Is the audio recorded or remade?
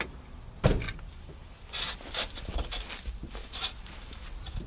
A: recorded